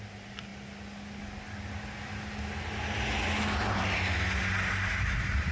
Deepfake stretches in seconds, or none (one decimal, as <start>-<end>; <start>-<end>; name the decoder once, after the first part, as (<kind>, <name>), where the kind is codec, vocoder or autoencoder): none